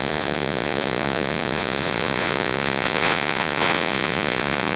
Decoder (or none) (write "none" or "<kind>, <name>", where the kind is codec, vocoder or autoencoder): vocoder, Vocos